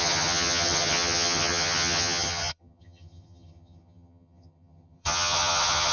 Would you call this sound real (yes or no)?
no